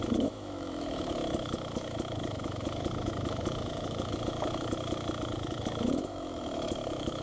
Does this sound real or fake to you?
fake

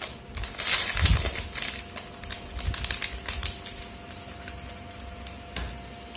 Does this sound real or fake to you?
real